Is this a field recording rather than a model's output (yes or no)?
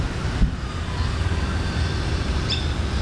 yes